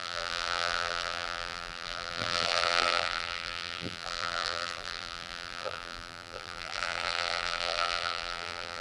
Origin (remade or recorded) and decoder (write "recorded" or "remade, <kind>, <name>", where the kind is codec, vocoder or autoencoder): remade, vocoder, BigVGAN v2